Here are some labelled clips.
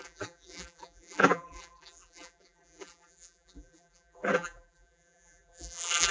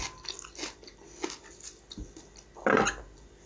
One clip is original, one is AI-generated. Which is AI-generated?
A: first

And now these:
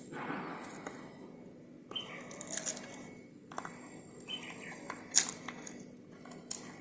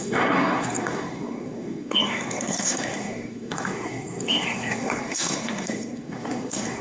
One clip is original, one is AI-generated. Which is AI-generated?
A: second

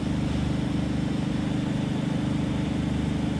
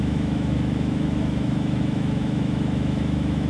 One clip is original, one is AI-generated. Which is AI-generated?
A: second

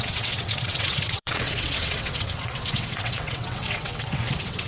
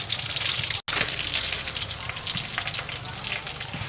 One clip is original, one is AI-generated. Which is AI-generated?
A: first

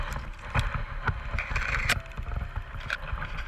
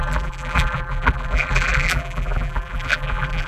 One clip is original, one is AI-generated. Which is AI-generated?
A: second